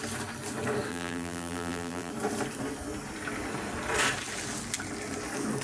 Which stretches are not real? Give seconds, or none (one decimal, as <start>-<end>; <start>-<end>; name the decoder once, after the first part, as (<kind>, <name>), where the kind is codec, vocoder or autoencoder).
0.9-2.1 (vocoder, BigVGAN v2)